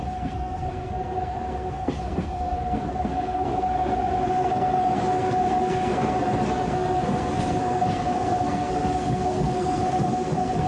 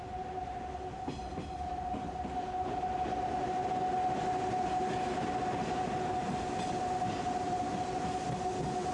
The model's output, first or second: first